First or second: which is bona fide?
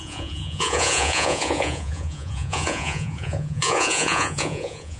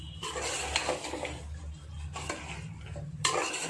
second